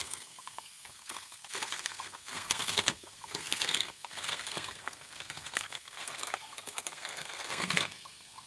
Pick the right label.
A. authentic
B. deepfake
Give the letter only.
B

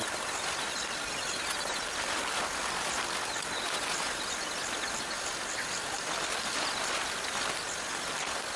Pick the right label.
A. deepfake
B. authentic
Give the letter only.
B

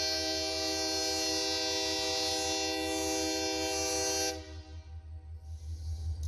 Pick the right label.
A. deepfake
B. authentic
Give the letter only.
B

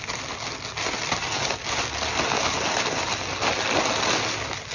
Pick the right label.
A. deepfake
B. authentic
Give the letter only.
B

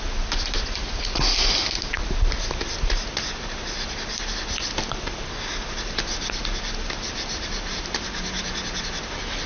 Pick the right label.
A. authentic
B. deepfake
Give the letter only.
A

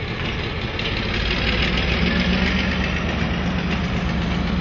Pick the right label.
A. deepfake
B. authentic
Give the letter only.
B